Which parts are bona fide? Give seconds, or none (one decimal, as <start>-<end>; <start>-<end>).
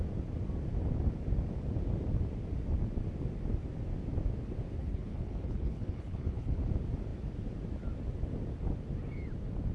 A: 0.0-4.8; 6.6-9.7